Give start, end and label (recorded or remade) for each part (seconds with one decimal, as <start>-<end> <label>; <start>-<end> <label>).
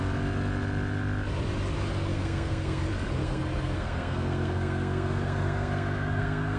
0.0-2.1 recorded; 2.1-2.8 remade; 2.8-3.2 recorded; 3.2-6.6 remade